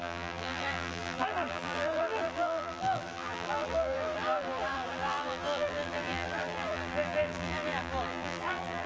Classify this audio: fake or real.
fake